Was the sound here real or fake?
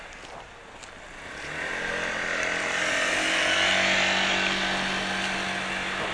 real